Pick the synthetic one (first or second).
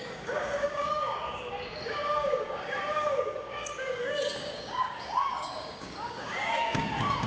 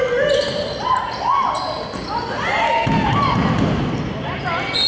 first